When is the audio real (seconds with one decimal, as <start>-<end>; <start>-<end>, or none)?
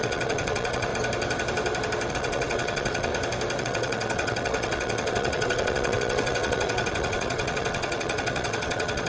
0.9-2.1; 3.1-3.6